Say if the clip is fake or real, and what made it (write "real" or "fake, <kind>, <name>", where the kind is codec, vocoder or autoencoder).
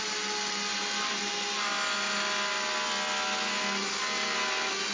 real